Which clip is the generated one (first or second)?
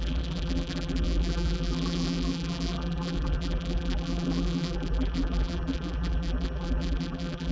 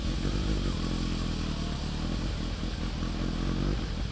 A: first